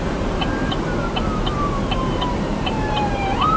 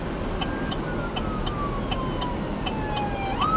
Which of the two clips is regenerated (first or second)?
first